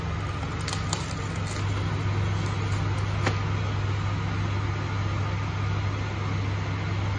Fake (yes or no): no